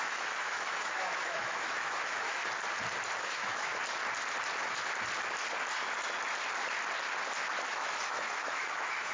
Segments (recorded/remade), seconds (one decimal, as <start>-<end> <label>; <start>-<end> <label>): 0.0-2.4 remade; 2.4-3.2 recorded; 3.2-3.7 remade; 3.7-7.7 recorded; 7.7-9.1 remade